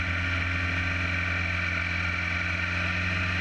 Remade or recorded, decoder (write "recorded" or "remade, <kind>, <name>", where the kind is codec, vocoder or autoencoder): recorded